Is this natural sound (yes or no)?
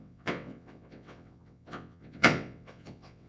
no